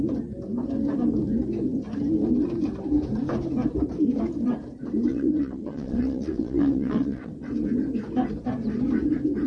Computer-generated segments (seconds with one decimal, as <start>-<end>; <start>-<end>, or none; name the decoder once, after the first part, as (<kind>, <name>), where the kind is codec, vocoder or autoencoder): 5.1-7.3 (vocoder, WaveNeXt)